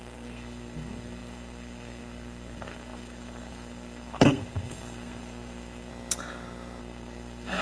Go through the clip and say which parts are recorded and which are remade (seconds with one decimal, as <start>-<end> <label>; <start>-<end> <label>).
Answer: 0.0-5.9 remade; 5.9-6.8 recorded; 6.8-7.6 remade